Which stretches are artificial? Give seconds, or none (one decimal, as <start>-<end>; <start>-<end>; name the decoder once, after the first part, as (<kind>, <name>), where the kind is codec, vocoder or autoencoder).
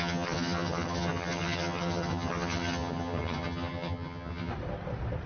0.0-4.5 (vocoder, HiFi-GAN)